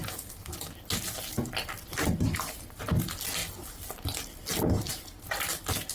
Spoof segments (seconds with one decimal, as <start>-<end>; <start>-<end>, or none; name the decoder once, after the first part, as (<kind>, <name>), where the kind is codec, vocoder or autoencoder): none